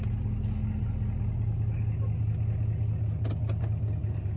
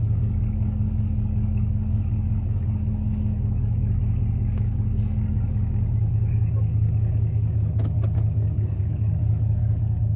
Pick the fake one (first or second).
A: second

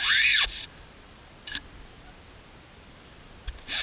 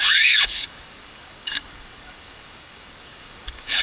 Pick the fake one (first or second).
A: second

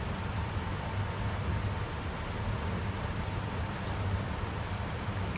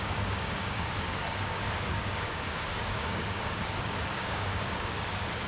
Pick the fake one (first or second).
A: second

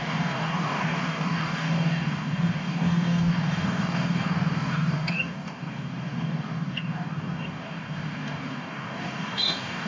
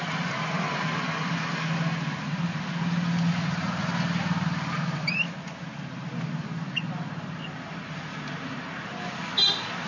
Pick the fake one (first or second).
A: first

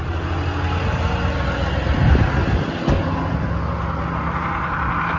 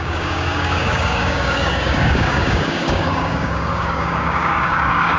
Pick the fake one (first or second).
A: second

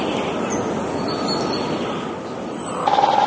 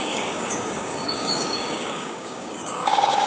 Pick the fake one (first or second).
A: second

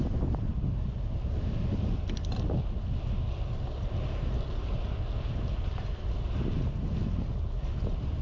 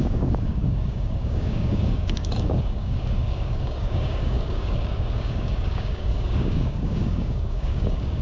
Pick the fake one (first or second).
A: second